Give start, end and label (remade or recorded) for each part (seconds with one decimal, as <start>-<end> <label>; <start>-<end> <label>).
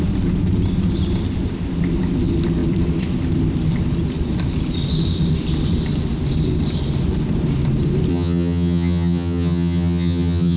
0.0-8.1 recorded; 8.1-10.6 remade